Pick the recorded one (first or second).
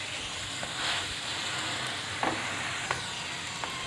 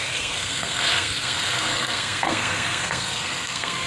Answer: first